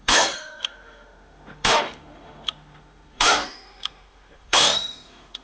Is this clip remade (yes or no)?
yes